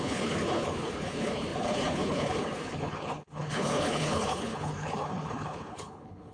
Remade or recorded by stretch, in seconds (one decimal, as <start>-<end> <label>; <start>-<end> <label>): 0.0-6.3 remade